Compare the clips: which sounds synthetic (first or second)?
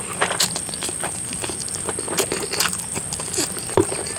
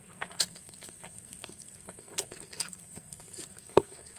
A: second